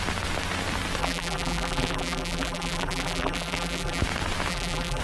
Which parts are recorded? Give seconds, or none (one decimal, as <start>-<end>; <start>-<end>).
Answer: 0.0-1.0; 4.0-4.5